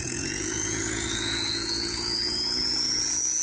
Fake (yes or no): yes